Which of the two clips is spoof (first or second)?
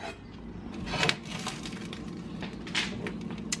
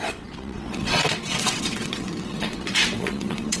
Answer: second